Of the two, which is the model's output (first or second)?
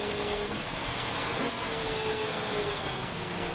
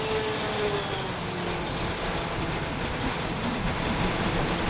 first